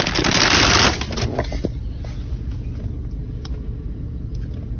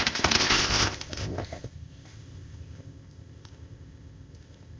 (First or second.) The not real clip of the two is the second